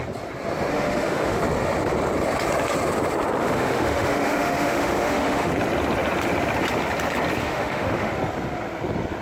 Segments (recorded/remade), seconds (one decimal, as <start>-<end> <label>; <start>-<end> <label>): 0.0-0.7 recorded; 0.7-1.4 remade; 1.4-3.4 recorded; 3.4-5.5 remade; 5.5-7.4 recorded; 7.4-8.1 remade; 8.1-9.2 recorded